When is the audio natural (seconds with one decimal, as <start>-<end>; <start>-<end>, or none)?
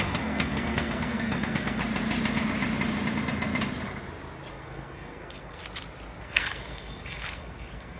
1.8-4.5; 5.6-6.2